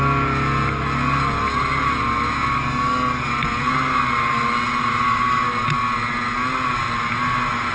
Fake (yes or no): no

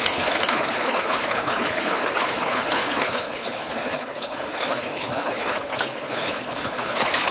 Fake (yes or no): yes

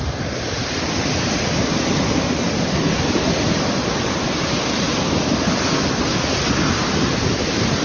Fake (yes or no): no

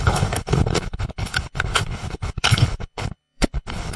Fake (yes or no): yes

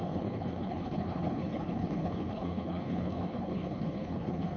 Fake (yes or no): yes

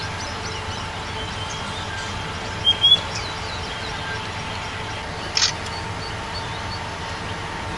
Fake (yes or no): no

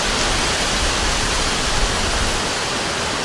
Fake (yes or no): no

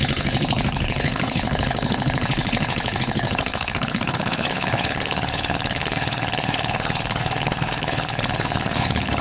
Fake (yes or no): yes